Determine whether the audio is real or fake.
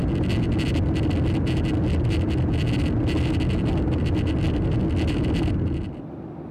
real